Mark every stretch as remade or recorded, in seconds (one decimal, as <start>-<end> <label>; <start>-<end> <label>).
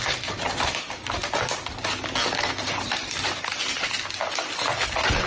0.0-1.2 remade; 1.2-2.6 recorded; 2.6-3.5 remade; 3.5-4.8 recorded; 4.8-5.3 remade